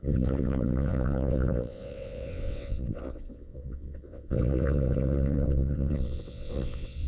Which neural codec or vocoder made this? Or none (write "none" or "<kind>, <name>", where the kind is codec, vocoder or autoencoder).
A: vocoder, WaveNeXt